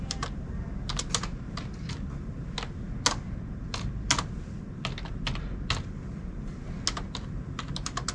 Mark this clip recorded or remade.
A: recorded